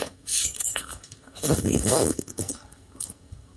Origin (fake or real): fake